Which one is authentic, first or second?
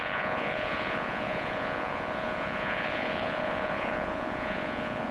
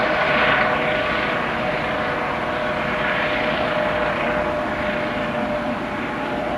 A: second